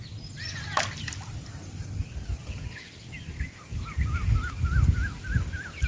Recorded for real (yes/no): yes